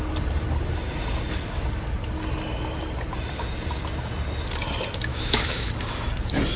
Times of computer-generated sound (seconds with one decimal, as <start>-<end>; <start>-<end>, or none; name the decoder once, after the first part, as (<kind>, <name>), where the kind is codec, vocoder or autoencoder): 5.1-5.7 (autoencoder, DAC-VAE)